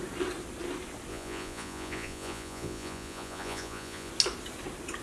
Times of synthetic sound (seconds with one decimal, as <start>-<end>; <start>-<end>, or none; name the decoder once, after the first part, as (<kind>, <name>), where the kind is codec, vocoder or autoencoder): 1.1-4.1 (vocoder, Vocos)